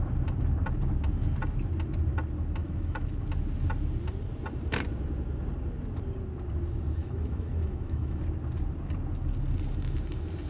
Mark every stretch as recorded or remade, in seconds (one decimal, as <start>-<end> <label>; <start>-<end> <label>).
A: 0.0-2.6 recorded; 2.6-3.1 remade; 3.1-7.0 recorded; 7.0-8.2 remade; 8.2-10.5 recorded